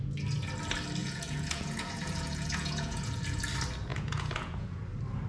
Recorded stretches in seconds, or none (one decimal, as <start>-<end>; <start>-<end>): 0.0-1.0; 3.5-3.9; 4.8-5.3

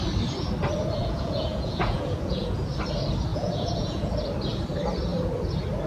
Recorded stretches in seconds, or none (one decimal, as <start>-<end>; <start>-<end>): 0.0-1.0; 2.6-3.3; 4.1-5.9

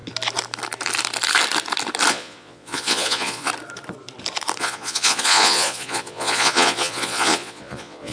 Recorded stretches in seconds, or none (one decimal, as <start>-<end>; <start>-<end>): 0.0-2.1; 3.5-4.6

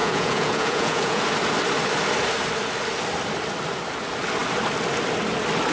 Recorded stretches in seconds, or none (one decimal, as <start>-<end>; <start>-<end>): 1.2-5.7

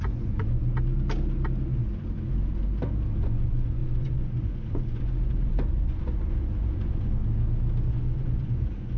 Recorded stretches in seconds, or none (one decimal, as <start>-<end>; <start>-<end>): 0.6-3.2; 7.2-7.9

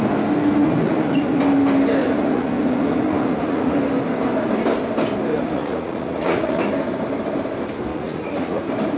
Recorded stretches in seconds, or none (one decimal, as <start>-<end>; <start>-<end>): 0.0-0.6; 1.4-2.0; 3.8-5.3; 6.6-7.9; 8.6-9.0